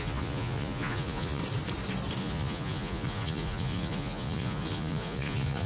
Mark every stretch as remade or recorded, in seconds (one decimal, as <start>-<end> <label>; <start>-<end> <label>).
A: 0.0-1.4 remade; 1.4-2.2 recorded; 2.2-5.7 remade